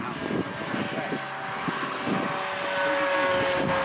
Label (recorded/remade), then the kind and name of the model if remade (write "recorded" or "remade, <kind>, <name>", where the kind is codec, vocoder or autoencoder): recorded